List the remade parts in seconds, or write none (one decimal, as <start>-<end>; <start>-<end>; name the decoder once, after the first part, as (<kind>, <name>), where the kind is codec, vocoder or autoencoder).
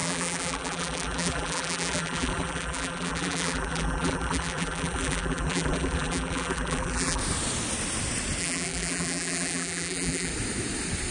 0.0-7.2 (vocoder, BigVGAN v2); 8.4-10.3